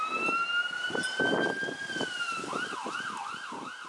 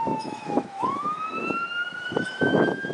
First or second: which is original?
first